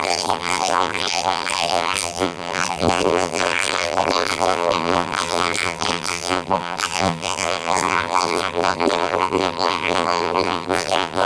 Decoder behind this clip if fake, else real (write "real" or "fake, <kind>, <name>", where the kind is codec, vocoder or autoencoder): fake, vocoder, BigVGAN v2